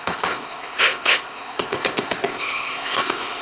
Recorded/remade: remade